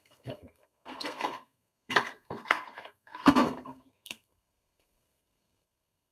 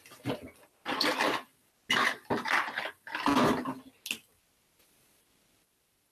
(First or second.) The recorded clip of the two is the second